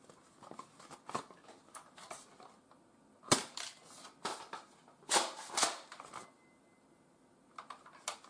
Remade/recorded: recorded